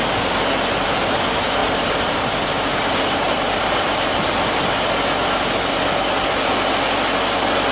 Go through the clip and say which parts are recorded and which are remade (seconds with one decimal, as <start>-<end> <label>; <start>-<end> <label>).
0.0-1.6 recorded; 1.6-4.9 remade; 4.9-7.7 recorded